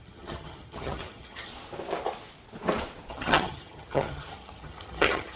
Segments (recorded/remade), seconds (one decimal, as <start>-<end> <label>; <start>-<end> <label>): 0.0-1.5 remade; 1.5-3.1 recorded; 3.1-5.4 remade